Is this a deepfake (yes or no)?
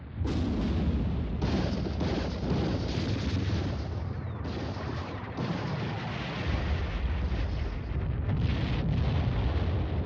no